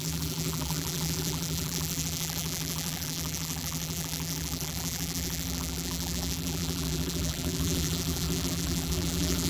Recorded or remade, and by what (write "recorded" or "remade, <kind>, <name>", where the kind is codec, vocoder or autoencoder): remade, vocoder, BigVGAN v2